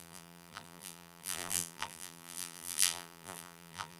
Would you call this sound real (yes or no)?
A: no